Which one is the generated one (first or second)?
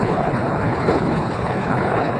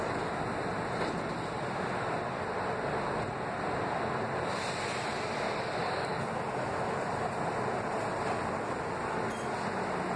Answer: first